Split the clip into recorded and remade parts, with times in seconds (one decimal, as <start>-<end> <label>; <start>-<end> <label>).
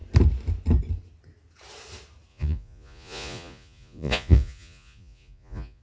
0.0-2.3 recorded; 2.3-5.8 remade